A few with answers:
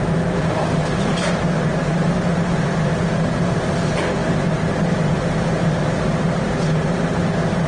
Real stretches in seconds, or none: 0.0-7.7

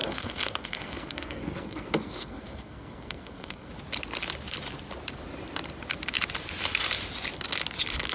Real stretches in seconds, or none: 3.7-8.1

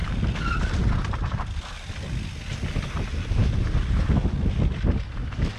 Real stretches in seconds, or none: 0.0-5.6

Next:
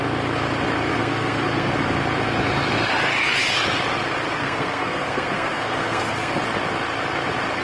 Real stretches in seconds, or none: 0.0-0.9; 1.7-4.4; 6.3-7.6

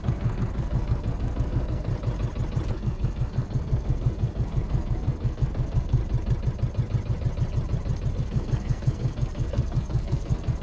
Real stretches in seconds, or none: 1.9-2.7; 6.0-8.1